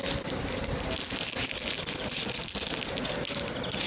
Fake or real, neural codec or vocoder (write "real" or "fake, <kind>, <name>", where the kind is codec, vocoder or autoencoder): real